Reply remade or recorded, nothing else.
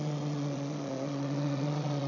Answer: remade